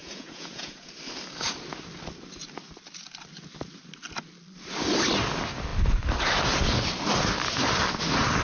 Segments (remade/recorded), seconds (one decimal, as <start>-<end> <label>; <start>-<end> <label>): 0.0-0.9 remade; 0.9-8.4 recorded